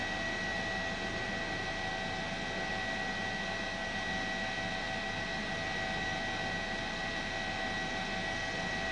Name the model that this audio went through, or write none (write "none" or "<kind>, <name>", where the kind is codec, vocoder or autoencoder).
none